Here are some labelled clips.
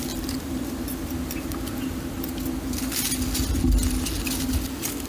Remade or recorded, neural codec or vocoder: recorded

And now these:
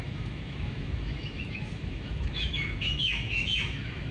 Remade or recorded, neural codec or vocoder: remade, autoencoder, DAC-VAE